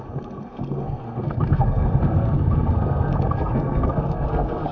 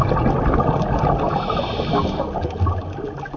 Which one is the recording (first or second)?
second